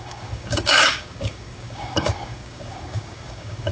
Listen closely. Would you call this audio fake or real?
fake